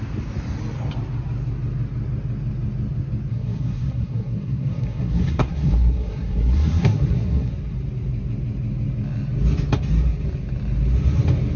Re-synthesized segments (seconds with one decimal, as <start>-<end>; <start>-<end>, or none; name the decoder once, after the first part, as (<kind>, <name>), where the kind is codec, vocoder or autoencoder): 3.3-7.5 (codec, SNAC)